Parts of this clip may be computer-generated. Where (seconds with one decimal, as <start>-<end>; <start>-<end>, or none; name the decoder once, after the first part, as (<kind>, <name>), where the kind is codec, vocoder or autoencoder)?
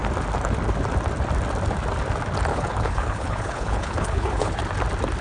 2.5-4.6 (codec, HILCodec)